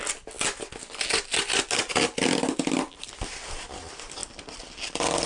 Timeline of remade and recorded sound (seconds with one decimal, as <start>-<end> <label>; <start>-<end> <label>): 0.0-5.3 recorded